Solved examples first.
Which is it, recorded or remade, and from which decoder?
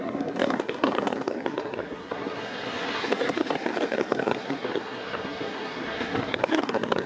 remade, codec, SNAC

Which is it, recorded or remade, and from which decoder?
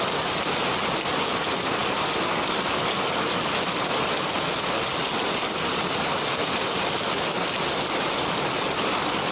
recorded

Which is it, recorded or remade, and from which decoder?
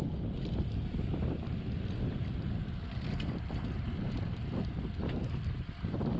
recorded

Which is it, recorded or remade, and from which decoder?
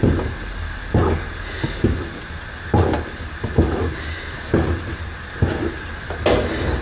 recorded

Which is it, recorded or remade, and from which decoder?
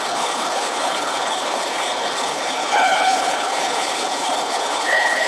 remade, codec, HILCodec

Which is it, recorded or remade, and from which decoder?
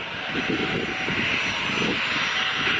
recorded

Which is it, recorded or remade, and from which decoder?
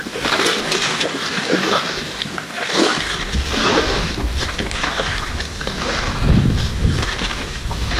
remade, codec, DAC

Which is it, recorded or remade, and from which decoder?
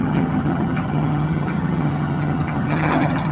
remade, vocoder, HiFi-GAN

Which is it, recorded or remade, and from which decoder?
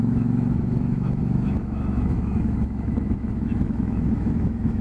remade, autoencoder, DAC-VAE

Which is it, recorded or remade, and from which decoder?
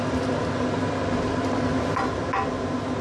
recorded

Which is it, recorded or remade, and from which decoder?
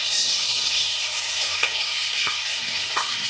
remade, codec, SNAC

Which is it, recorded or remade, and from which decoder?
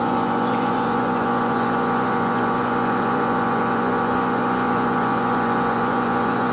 remade, vocoder, Vocos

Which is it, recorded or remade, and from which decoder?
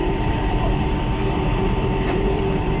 remade, vocoder, BigVGAN v2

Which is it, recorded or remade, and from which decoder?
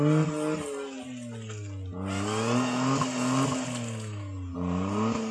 recorded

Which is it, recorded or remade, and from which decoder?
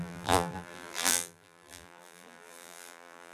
remade, vocoder, BigVGAN v2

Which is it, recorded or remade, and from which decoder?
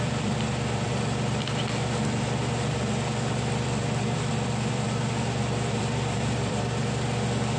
remade, vocoder, BigVGAN v2